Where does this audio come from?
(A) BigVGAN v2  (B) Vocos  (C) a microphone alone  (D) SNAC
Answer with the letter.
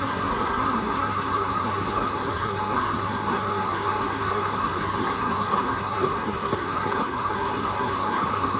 D